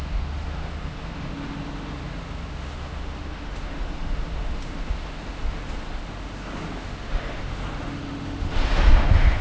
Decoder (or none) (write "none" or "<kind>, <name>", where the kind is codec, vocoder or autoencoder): autoencoder, DAC-VAE